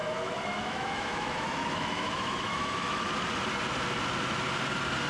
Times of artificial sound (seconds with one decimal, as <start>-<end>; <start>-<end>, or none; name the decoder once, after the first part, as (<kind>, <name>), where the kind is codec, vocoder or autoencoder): 0.0-3.1 (autoencoder, DAC-VAE)